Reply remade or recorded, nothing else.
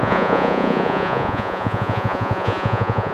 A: remade